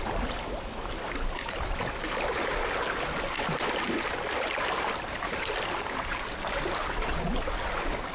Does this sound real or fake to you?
real